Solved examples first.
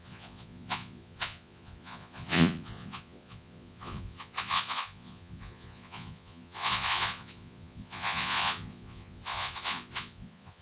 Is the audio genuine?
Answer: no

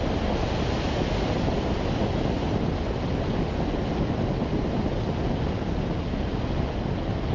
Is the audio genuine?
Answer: yes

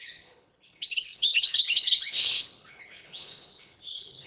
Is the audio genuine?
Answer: no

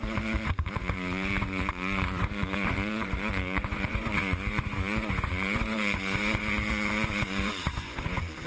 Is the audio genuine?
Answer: no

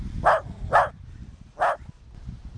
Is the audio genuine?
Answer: yes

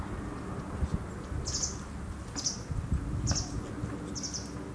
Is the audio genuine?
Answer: yes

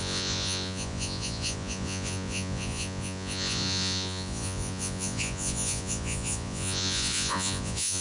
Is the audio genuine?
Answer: no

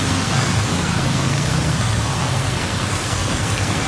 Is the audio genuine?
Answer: no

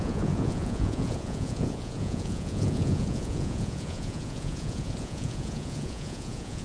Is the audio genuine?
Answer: no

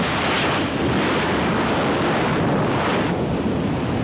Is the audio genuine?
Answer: yes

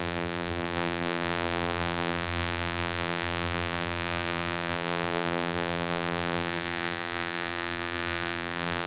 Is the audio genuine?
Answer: no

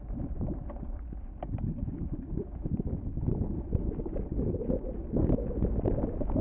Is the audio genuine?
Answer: yes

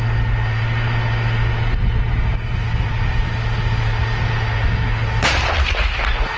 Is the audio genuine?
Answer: yes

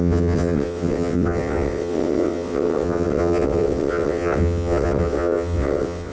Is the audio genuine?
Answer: no